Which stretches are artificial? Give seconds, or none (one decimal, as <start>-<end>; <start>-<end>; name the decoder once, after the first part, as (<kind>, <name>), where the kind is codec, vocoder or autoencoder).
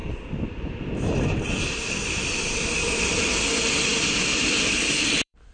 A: 0.0-3.2 (vocoder, BigVGAN v2); 3.9-5.5